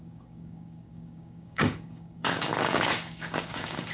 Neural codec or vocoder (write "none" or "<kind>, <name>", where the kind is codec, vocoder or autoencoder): codec, DAC